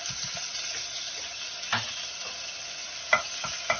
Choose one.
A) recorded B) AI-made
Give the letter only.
A